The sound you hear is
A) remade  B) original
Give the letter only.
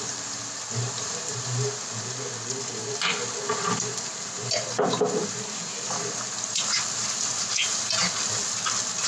B